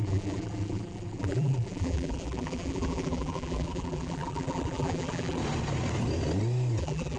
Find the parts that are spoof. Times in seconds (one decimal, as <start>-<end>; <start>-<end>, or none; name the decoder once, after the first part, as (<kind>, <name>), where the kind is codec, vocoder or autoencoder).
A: 0.0-5.4 (vocoder, BigVGAN v2); 6.8-7.2